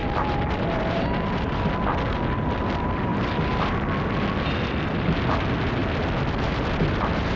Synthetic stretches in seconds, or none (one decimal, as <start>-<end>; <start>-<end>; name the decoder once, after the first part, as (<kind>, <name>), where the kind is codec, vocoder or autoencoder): none